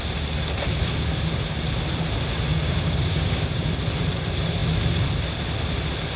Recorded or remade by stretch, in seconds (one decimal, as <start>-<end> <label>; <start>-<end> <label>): 0.0-2.5 recorded; 2.5-3.7 remade; 3.7-6.2 recorded